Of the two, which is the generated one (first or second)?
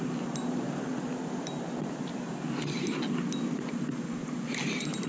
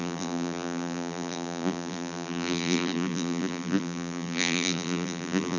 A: second